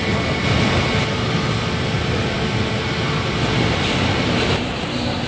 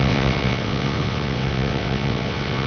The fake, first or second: second